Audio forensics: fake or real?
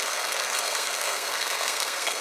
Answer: fake